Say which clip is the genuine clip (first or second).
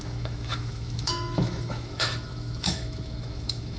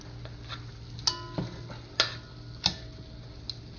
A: second